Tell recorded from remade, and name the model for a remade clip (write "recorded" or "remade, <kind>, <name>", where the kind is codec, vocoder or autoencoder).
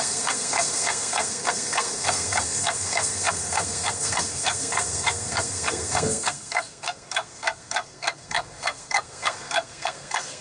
remade, codec, SNAC